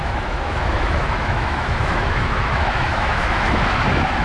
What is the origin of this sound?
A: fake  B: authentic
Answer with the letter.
A